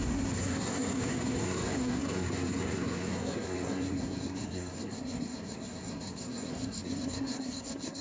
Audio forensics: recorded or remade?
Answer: remade